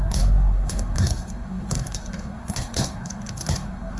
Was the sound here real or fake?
fake